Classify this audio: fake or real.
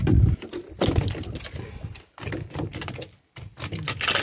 real